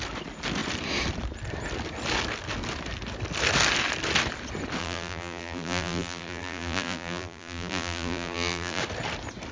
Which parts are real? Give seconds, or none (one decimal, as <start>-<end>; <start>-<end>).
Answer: 0.0-4.8; 8.8-9.5